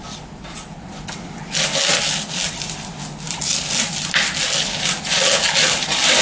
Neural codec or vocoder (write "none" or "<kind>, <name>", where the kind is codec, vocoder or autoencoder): none